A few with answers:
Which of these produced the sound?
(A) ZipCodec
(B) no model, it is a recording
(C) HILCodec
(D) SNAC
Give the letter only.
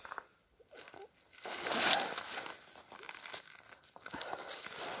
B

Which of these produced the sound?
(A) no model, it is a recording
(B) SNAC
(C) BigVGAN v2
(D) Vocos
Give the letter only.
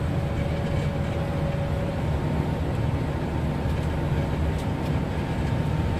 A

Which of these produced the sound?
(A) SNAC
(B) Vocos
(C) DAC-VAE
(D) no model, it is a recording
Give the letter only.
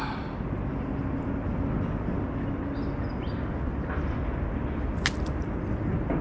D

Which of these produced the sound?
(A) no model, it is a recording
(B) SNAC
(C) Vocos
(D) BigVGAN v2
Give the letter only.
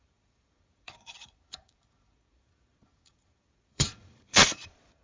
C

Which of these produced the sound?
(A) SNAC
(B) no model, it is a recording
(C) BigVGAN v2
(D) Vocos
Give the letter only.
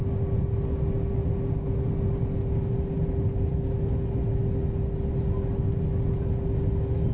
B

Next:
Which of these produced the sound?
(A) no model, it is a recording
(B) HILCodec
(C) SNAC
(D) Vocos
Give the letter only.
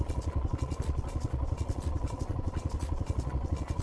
D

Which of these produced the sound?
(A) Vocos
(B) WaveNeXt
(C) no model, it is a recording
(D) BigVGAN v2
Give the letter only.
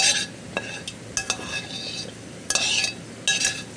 C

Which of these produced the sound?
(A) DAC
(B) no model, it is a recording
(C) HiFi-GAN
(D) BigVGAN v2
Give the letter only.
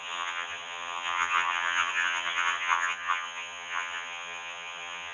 C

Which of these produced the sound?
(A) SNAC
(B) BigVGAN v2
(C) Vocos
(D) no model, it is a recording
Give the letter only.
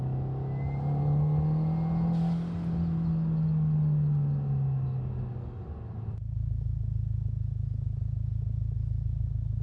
D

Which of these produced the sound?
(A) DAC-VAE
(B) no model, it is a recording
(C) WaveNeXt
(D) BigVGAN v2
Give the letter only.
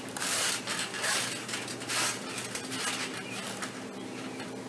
B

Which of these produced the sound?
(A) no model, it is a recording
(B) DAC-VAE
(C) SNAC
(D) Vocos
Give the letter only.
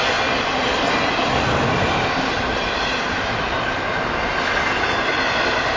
A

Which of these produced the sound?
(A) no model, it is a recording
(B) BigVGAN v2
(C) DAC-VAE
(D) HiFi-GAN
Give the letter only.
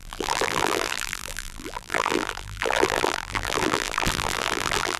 B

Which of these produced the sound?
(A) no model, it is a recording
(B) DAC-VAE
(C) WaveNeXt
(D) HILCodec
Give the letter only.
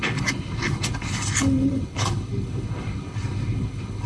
D